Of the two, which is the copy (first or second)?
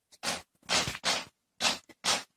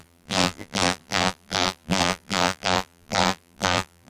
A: second